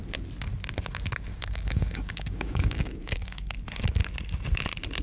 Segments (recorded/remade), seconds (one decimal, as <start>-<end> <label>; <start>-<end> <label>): 0.0-1.3 recorded; 1.3-3.6 remade; 3.6-5.0 recorded